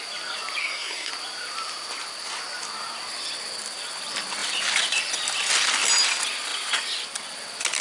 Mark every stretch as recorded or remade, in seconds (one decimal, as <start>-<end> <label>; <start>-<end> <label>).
0.0-0.6 recorded; 0.6-1.1 remade; 1.1-7.8 recorded